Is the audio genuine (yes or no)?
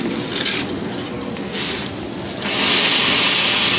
yes